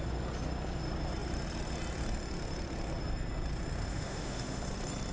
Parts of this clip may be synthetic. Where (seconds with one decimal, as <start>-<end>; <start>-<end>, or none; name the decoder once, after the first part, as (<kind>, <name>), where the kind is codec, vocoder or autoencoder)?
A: 3.9-4.6 (autoencoder, DAC-VAE)